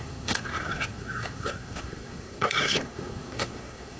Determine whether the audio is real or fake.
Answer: fake